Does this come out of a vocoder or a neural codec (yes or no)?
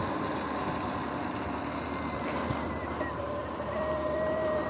no